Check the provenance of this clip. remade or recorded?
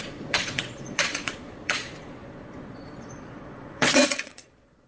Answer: remade